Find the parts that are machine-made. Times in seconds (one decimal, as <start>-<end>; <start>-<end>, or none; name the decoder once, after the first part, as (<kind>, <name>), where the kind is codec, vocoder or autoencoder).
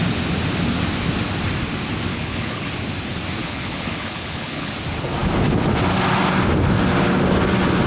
2.1-2.7 (codec, HILCodec); 3.4-4.7